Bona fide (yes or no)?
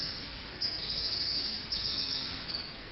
no